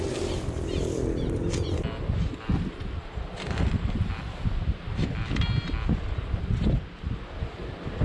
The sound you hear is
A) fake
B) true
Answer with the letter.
B